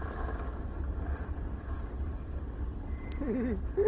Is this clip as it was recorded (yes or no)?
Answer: yes